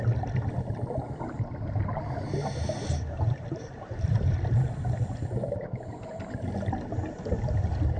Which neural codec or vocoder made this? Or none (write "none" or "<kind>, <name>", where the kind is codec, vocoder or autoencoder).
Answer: none